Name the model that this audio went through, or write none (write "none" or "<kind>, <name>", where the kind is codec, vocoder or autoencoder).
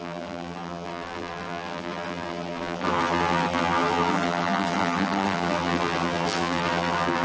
vocoder, BigVGAN v2